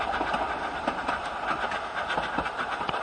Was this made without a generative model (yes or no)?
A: yes